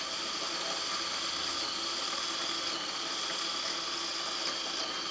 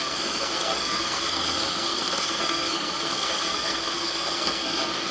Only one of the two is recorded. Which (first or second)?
first